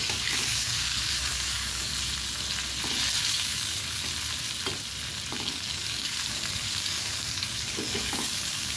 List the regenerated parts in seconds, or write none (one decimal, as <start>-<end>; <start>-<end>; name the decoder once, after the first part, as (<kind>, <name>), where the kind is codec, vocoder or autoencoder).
0.0-1.9 (codec, DAC); 3.2-4.1; 5.3-8.8